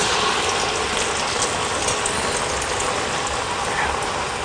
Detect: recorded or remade recorded